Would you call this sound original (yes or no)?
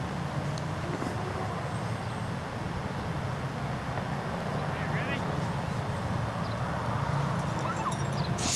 yes